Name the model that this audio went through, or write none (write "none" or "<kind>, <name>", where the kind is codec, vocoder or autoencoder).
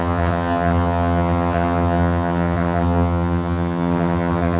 vocoder, HiFi-GAN